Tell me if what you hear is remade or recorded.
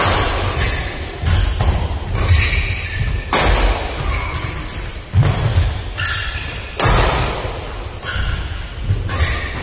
recorded